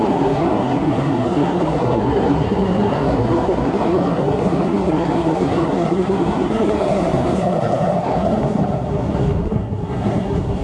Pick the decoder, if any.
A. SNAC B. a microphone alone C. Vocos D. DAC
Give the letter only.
A